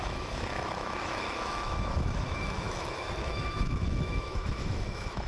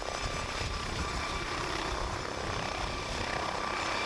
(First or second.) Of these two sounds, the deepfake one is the first